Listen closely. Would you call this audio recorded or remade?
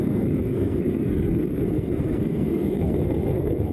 remade